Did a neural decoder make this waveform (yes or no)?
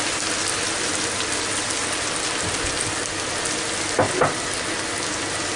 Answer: no